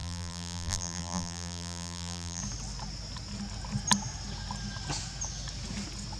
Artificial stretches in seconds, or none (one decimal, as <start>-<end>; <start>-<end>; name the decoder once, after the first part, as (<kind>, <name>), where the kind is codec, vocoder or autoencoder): 0.0-2.4 (vocoder, BigVGAN v2)